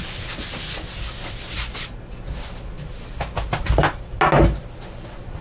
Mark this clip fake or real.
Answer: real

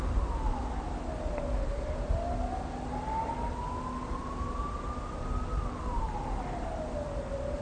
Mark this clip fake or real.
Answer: real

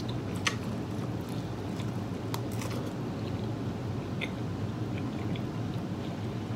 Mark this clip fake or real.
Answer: real